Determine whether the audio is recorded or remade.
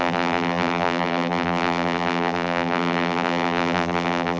remade